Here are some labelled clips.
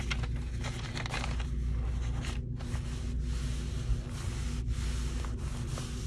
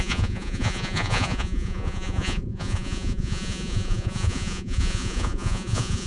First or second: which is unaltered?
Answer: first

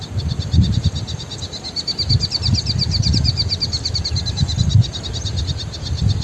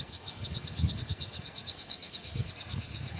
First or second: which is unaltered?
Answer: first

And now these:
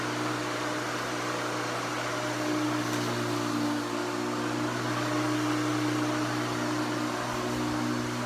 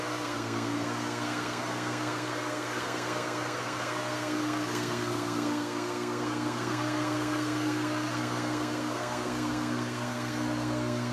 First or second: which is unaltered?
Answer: first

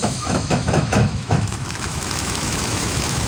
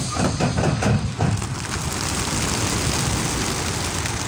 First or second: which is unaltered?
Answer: second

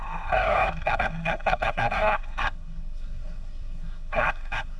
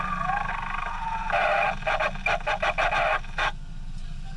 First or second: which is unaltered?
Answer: second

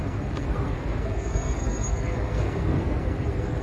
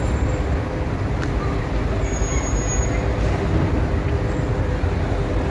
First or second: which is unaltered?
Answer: second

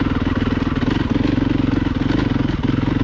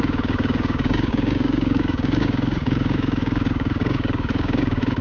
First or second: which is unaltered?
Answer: first